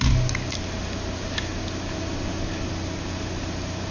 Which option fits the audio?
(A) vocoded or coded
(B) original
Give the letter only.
B